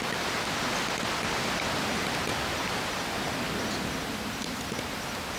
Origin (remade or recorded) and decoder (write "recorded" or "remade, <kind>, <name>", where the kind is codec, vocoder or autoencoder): recorded